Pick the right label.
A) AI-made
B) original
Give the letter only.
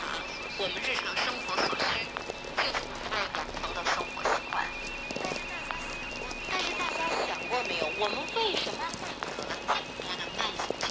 B